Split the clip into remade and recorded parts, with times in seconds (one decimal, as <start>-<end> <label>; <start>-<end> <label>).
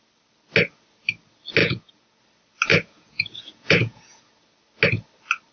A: 0.0-1.6 recorded; 1.6-2.2 remade; 2.2-2.7 recorded; 2.7-4.3 remade; 4.3-5.5 recorded